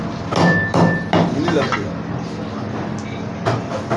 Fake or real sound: real